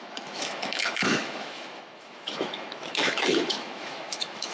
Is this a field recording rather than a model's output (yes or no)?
no